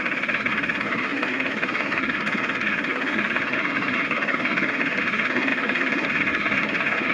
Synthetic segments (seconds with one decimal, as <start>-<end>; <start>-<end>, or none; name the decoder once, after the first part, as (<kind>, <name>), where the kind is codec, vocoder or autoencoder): 0.0-7.1 (codec, SNAC)